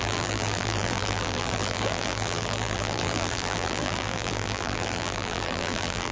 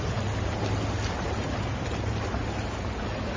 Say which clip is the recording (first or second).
second